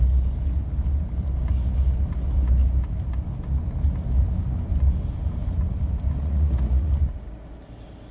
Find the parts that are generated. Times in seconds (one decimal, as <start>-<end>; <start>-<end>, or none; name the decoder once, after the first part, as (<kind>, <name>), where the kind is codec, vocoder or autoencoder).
6.2-6.9 (vocoder, Vocos)